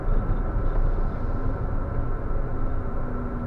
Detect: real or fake real